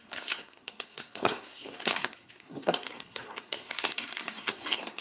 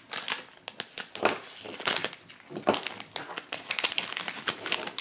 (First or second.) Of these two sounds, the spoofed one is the first